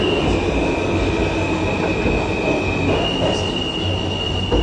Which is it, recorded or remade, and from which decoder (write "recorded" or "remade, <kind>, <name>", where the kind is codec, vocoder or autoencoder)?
recorded